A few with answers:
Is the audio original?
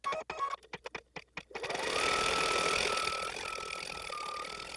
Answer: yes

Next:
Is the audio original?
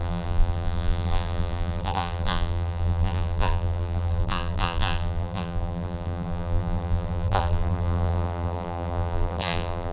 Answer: no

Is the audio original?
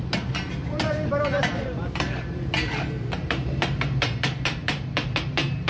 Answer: no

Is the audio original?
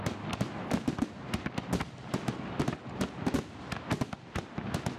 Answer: yes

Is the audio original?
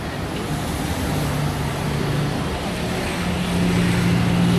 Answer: yes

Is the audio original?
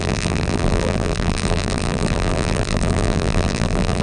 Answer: no